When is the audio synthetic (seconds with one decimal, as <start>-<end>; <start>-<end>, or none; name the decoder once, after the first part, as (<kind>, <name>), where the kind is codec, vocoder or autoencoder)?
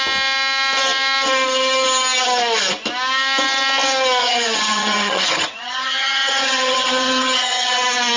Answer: 4.2-7.7 (vocoder, HiFi-GAN)